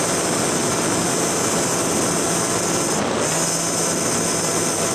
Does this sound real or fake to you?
real